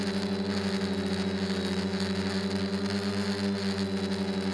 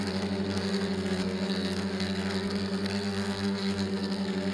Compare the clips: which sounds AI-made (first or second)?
second